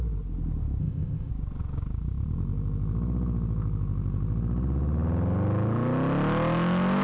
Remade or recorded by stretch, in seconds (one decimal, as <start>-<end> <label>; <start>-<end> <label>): 0.0-0.8 recorded; 0.8-1.3 remade; 1.3-7.0 recorded